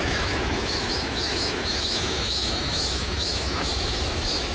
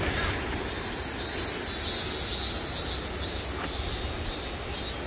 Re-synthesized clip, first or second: first